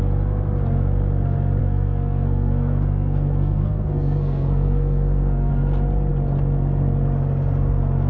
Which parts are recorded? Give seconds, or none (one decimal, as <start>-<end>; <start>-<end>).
0.0-1.6; 5.5-8.1